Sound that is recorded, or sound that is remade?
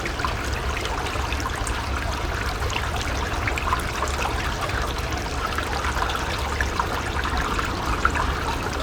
recorded